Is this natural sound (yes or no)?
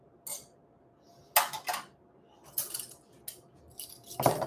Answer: yes